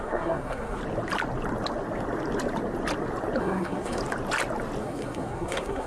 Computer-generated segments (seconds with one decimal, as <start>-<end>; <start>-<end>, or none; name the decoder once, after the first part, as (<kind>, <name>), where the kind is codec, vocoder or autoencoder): 0.0-0.8 (codec, SNAC); 3.4-4.0; 4.8-5.9